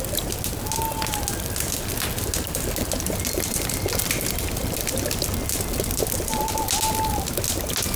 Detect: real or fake real